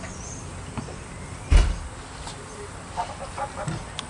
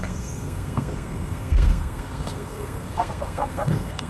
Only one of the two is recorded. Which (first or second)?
first